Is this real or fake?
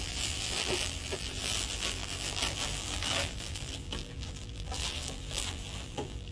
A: fake